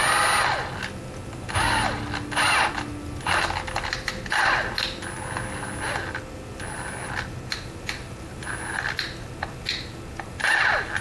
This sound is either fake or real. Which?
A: real